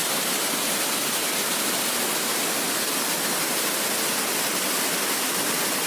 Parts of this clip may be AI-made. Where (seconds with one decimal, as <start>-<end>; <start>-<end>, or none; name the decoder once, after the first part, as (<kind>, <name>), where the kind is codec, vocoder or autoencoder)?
none